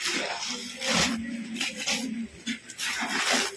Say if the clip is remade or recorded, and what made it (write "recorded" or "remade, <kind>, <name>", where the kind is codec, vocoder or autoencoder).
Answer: recorded